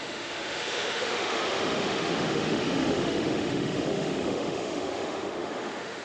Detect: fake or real fake